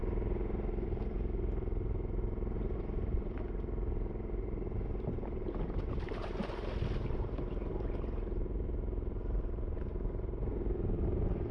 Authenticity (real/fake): fake